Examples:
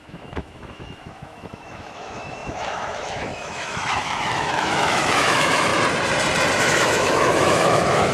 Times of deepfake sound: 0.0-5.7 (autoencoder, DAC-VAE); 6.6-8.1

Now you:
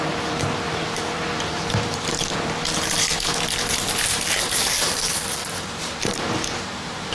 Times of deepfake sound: 0.0-7.1 (vocoder, BigVGAN v2)

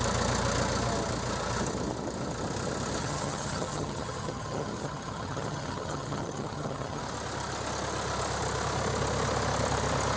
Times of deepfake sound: 3.0-7.0 (vocoder, HiFi-GAN)

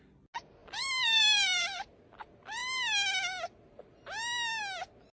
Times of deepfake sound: 0.6-2.0 (vocoder, BigVGAN v2)

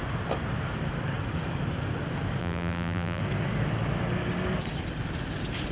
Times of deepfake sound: 2.4-3.2 (vocoder, BigVGAN v2)

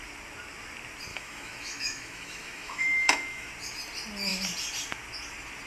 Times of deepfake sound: 1.1-3.5 (autoencoder, DAC-VAE)

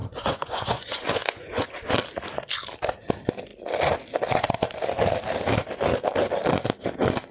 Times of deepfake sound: 0.0-1.7 (vocoder, Vocos)